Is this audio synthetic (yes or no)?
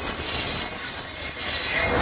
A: no